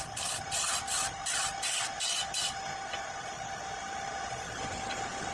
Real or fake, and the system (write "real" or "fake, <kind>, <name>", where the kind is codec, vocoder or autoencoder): real